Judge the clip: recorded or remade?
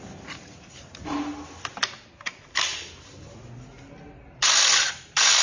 recorded